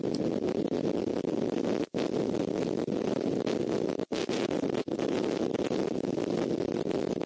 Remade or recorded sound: recorded